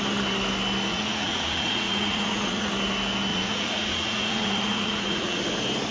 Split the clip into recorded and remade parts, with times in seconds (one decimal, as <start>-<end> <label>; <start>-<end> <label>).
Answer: 0.0-0.9 recorded; 0.9-2.7 remade; 2.7-3.3 recorded; 3.3-5.4 remade; 5.4-5.9 recorded

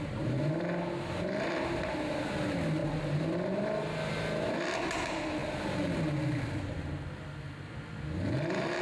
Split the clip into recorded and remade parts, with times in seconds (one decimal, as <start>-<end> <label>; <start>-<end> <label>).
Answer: 0.0-8.8 recorded

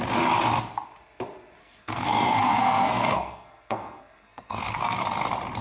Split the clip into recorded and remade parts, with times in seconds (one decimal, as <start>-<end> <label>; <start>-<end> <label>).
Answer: 0.0-1.6 recorded; 1.6-5.0 remade; 5.0-5.6 recorded

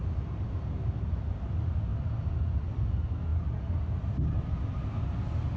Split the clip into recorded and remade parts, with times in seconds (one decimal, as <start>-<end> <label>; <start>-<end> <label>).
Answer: 0.0-5.6 recorded

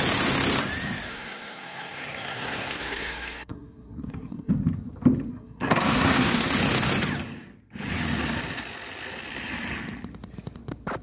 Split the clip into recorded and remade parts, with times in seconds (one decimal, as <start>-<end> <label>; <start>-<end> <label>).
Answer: 0.0-1.1 recorded; 1.1-4.5 remade; 4.5-5.3 recorded; 5.3-6.5 remade; 6.5-11.0 recorded